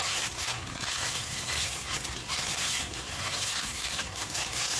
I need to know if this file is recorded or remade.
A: remade